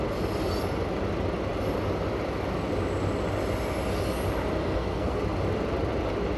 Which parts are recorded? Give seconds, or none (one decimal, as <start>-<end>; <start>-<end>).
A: 0.0-4.6; 5.2-6.4